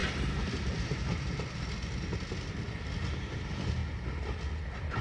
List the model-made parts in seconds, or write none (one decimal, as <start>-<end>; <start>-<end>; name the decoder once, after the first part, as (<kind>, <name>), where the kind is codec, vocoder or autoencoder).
3.0-3.8 (vocoder, BigVGAN v2); 4.6-5.0